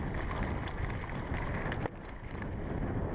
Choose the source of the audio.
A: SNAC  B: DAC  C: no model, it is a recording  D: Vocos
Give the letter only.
C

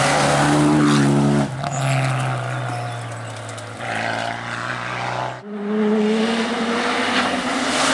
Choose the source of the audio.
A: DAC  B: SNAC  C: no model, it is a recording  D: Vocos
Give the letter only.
C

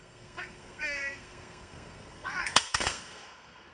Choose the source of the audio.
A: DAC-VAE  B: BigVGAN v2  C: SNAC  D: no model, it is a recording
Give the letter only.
C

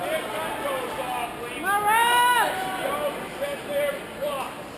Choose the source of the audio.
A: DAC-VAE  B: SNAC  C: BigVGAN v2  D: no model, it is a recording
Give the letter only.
D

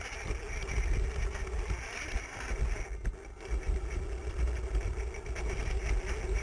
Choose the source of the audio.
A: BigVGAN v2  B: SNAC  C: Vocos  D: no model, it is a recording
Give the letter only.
D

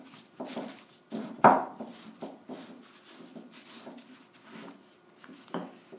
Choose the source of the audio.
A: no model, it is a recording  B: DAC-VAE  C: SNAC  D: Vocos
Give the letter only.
A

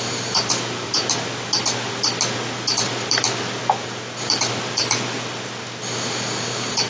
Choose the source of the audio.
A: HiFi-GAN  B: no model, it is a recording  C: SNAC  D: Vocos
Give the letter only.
B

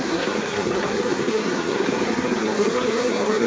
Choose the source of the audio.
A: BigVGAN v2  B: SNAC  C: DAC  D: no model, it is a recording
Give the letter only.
B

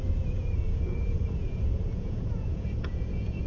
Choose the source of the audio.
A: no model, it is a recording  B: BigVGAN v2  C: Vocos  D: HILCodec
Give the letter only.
C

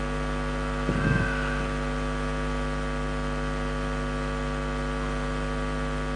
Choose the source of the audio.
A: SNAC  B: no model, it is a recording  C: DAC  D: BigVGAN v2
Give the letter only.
B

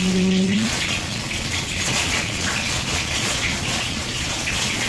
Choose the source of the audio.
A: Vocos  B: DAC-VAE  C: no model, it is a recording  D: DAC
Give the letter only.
A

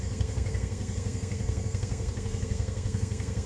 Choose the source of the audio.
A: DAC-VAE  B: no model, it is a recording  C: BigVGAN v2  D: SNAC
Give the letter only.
D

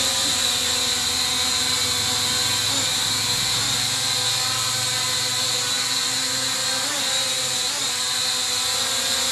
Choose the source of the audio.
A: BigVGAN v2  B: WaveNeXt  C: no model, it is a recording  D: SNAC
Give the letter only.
C